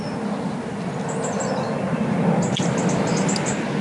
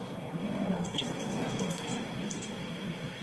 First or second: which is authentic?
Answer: first